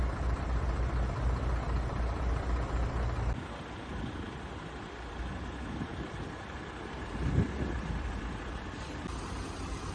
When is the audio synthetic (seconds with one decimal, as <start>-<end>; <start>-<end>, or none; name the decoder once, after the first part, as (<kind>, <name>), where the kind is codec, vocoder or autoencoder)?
none